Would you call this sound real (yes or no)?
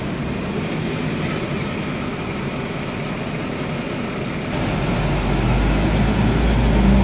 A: yes